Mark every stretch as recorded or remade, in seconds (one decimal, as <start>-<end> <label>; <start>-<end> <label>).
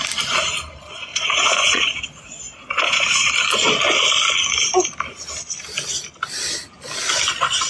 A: 0.0-1.1 recorded; 1.1-3.3 remade; 3.3-7.7 recorded